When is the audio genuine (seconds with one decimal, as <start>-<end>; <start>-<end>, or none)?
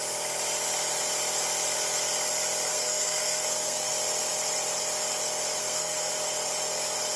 0.0-2.7; 3.9-5.6; 6.1-7.2